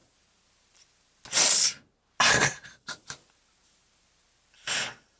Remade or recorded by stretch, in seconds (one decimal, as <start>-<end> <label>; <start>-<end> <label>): 0.0-5.2 recorded